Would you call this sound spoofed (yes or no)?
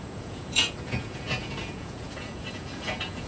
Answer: yes